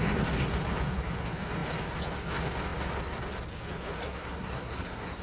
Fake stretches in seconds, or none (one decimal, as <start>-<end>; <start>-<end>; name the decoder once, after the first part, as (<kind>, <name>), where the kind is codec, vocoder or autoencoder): 4.0-5.2 (codec, SNAC)